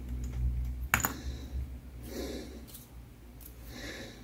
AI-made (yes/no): no